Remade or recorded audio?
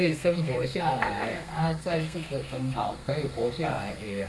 remade